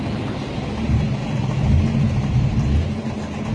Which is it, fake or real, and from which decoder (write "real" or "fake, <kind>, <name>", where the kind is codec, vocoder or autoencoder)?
real